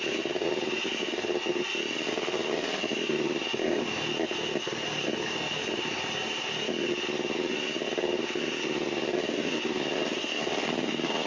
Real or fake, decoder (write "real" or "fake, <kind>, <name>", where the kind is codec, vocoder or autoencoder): real